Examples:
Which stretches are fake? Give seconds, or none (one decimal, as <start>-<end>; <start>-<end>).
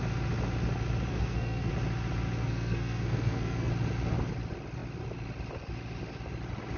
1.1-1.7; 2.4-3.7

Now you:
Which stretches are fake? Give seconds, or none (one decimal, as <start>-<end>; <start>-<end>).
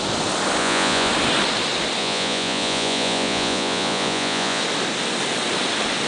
0.6-1.1; 2.0-4.6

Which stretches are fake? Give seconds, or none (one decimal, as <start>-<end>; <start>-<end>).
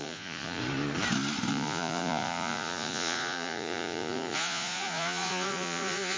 0.0-0.6; 1.5-6.2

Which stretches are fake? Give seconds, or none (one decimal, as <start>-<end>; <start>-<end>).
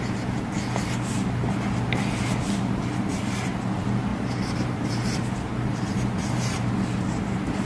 4.1-5.0; 5.5-6.7